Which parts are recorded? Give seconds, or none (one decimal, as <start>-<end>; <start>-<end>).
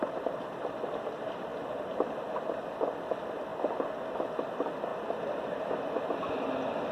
1.5-2.8; 3.5-4.1